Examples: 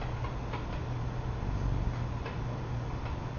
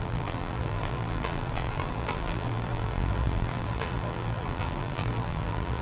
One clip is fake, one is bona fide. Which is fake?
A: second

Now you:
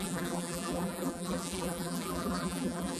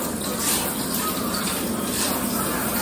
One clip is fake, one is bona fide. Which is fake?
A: first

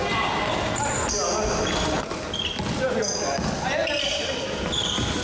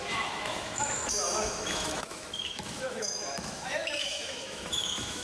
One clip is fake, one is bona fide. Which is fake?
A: second